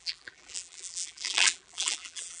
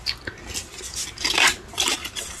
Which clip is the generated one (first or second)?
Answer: first